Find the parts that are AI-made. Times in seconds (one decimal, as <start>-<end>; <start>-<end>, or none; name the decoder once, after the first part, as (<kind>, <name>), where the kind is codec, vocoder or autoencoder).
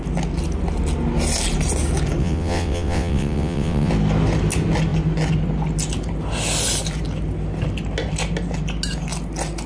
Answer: 2.2-3.9 (vocoder, WaveNeXt)